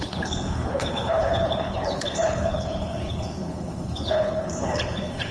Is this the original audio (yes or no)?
no